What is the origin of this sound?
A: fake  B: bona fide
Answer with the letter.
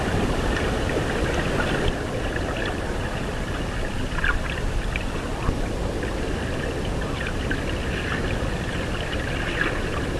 B